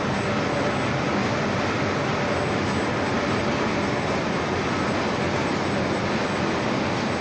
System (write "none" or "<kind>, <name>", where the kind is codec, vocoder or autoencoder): none